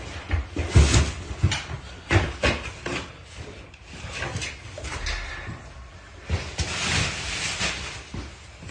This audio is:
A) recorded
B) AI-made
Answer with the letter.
A